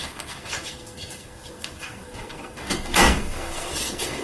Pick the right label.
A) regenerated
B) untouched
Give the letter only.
A